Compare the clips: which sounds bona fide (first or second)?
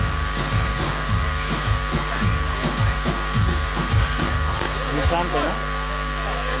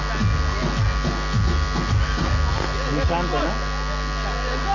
second